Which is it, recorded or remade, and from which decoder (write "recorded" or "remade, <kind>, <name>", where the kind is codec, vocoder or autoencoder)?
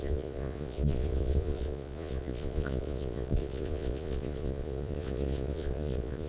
remade, vocoder, Vocos